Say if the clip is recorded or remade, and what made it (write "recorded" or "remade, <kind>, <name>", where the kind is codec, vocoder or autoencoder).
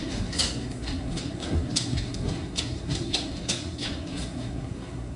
remade, codec, SNAC